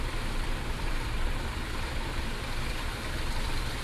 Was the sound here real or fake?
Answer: fake